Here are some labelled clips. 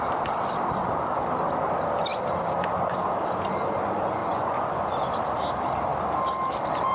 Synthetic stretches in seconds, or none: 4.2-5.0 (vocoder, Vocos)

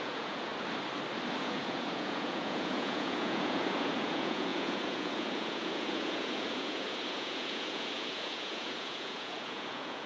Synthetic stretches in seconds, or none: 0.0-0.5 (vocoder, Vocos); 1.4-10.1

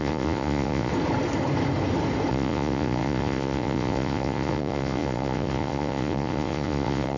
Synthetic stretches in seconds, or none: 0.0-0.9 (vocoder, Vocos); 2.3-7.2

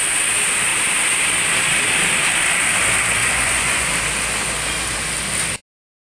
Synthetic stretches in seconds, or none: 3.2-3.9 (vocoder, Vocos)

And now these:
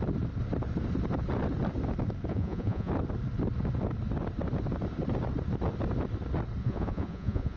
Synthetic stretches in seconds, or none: 2.3-2.9 (vocoder, Vocos); 6.6-7.6